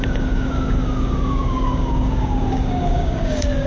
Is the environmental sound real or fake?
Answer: fake